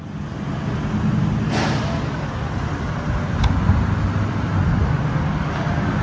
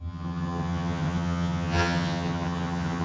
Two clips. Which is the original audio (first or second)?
first